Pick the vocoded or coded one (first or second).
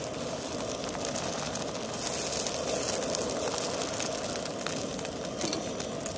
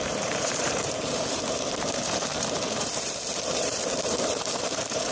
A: second